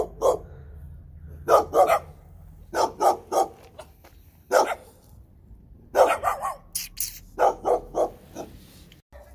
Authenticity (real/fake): real